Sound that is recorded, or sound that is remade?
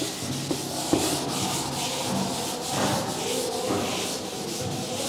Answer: recorded